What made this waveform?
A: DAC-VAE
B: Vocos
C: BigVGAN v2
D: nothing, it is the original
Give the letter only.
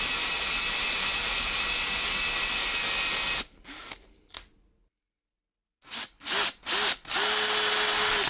D